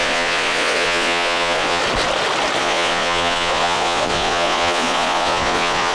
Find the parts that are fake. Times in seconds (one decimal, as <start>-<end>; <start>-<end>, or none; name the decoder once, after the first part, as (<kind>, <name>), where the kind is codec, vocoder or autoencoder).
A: 0.0-1.8 (vocoder, Vocos); 2.6-5.9